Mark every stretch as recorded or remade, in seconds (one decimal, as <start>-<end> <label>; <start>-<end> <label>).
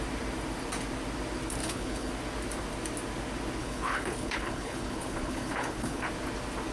0.0-1.6 recorded; 1.6-2.1 remade; 2.1-3.6 recorded; 3.6-6.1 remade; 6.1-6.7 recorded